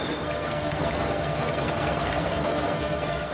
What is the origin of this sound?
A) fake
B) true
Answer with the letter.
A